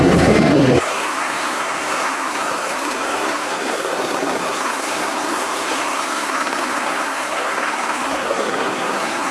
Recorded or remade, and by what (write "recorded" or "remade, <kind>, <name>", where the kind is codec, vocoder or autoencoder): remade, codec, SNAC